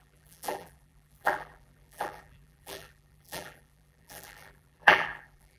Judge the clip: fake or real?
fake